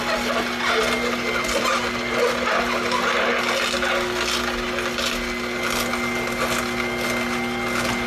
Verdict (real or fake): real